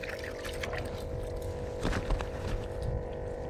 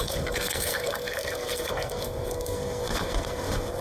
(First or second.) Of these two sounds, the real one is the first